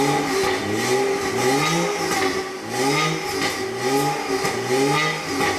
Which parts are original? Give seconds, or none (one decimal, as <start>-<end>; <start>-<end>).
0.0-5.6